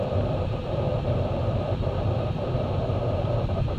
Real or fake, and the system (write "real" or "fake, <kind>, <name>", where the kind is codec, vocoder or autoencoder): fake, vocoder, BigVGAN v2